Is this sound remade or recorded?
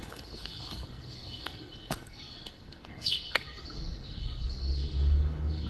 remade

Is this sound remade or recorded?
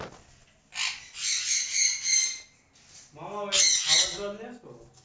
recorded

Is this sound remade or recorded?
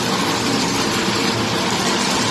recorded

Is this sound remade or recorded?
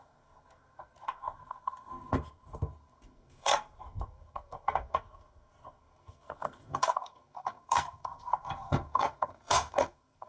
remade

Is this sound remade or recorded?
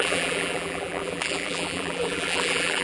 remade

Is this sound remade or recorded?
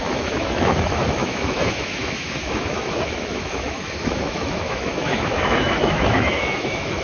remade